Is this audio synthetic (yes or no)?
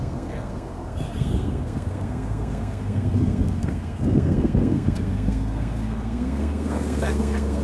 yes